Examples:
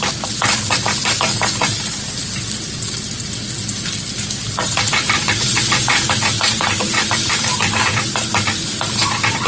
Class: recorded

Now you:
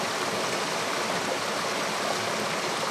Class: recorded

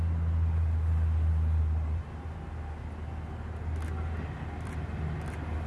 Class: recorded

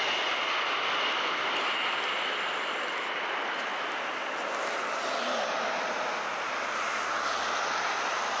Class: recorded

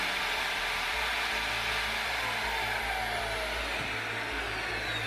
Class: recorded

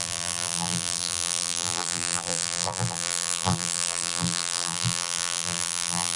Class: remade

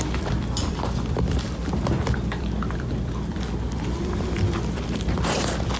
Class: remade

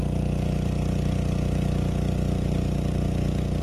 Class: remade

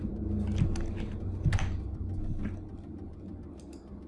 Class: recorded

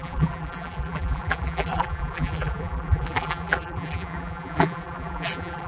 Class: remade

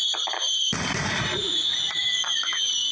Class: remade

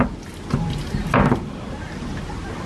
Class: recorded